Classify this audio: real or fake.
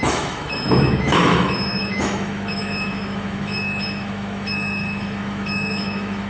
fake